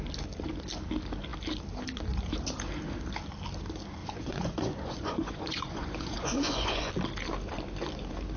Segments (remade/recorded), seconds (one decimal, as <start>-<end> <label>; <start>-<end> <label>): 0.0-4.0 recorded; 4.0-6.9 remade; 6.9-8.4 recorded